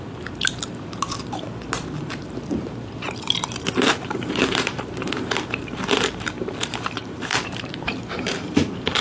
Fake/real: fake